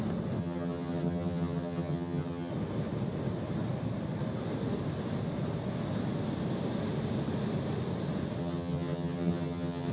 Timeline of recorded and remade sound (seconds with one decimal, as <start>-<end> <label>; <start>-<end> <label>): 0.0-0.4 recorded; 0.4-2.5 remade; 2.5-8.4 recorded; 8.4-9.9 remade